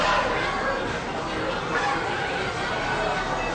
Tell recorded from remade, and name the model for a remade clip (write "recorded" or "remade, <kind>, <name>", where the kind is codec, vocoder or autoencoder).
recorded